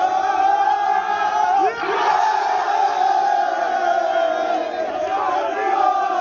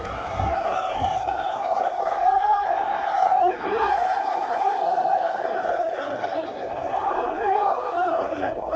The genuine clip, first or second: first